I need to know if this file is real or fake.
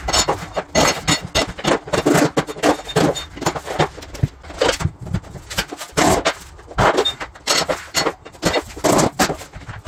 real